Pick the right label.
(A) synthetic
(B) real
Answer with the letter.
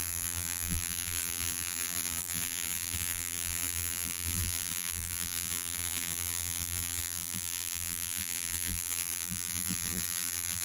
A